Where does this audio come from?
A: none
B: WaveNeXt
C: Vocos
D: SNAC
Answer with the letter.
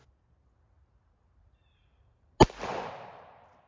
A